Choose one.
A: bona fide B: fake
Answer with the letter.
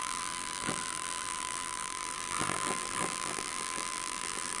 B